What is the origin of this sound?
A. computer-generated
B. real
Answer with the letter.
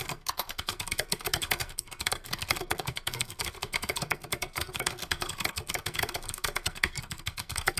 A